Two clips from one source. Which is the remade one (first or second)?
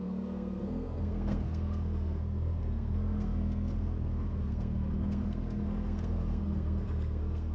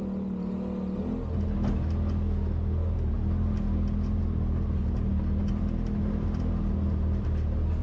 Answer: first